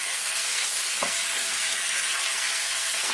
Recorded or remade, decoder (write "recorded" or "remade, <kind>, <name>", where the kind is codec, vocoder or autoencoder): remade, codec, SNAC